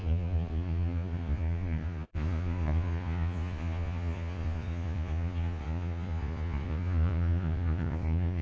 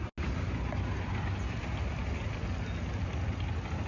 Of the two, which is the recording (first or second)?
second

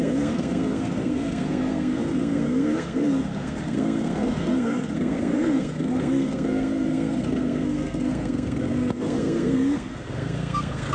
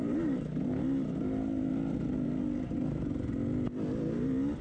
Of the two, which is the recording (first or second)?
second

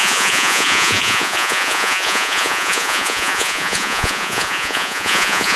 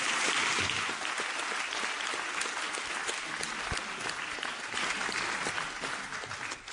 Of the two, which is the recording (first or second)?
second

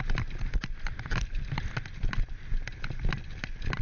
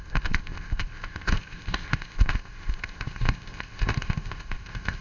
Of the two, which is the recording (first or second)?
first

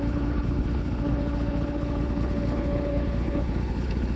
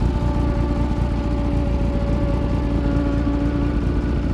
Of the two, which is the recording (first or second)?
second